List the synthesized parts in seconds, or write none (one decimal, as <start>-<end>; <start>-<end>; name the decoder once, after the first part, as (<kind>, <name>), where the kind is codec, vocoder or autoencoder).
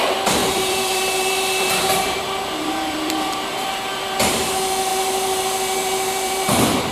0.4-4.5 (vocoder, BigVGAN v2); 4.9-6.9